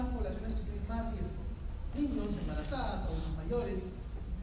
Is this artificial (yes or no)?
no